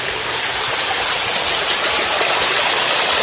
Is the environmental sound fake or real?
real